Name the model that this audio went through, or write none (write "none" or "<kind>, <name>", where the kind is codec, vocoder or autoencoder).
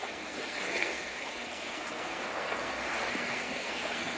codec, SNAC